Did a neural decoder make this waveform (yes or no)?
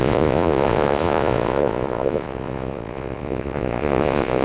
yes